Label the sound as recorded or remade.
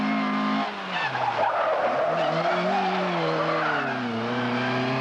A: recorded